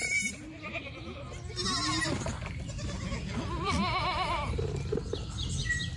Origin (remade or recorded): recorded